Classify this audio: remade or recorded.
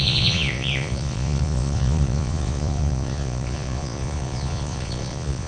remade